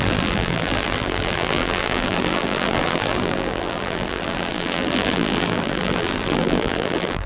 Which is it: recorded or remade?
remade